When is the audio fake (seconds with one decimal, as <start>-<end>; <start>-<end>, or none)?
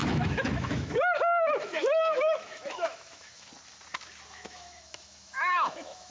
0.0-3.5; 4.3-6.1